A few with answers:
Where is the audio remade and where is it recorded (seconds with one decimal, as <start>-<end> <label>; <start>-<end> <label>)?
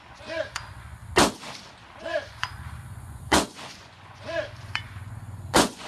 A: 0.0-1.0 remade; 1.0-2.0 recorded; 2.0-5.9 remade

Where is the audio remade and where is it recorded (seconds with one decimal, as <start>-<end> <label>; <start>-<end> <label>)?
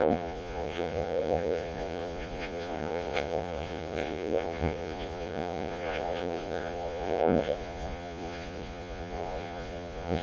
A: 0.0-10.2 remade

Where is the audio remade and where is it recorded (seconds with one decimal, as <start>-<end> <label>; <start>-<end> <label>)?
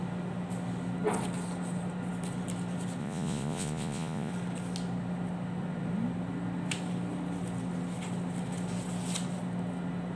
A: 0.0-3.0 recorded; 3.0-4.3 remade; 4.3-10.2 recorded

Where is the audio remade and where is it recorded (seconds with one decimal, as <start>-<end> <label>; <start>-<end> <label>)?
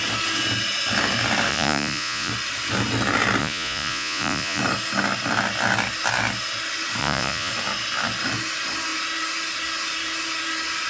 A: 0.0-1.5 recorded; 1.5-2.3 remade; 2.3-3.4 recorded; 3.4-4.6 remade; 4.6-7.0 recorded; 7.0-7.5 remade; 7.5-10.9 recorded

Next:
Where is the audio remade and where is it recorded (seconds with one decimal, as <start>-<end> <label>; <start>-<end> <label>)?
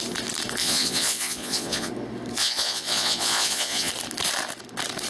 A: 0.0-0.6 recorded; 0.6-1.9 remade; 1.9-2.4 recorded; 2.4-3.9 remade; 3.9-5.1 recorded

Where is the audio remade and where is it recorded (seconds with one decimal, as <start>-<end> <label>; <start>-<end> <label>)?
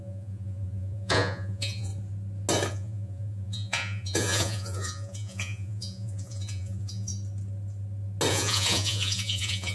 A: 0.0-1.9 remade; 1.9-2.7 recorded; 2.7-7.1 remade; 7.1-8.3 recorded; 8.3-9.7 remade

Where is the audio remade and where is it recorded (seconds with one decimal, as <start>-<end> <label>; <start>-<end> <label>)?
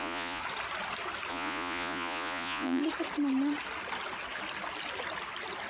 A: 0.0-0.4 remade; 0.4-1.3 recorded; 1.3-2.8 remade; 2.8-5.7 recorded